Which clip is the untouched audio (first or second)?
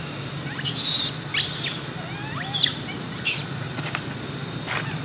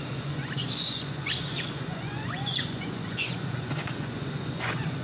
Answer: first